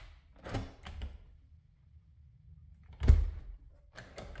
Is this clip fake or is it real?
real